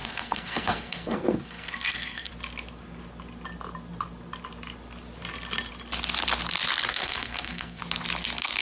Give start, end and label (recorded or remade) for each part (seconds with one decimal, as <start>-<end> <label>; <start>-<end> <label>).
0.0-2.3 remade; 2.3-6.9 recorded; 6.9-7.8 remade; 7.8-8.6 recorded